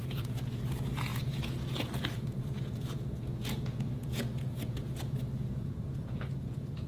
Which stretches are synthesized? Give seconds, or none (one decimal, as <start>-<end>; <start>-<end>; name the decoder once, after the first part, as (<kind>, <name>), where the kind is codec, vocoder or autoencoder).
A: 0.0-6.9 (vocoder, Vocos)